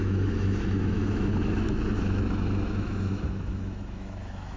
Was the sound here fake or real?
fake